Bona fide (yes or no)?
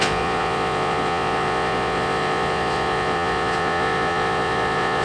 no